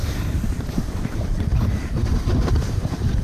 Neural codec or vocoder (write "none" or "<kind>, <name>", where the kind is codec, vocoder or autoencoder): vocoder, BigVGAN v2